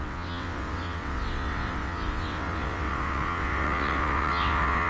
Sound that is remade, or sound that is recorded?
remade